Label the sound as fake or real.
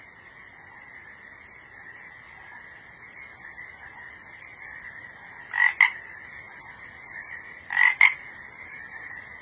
real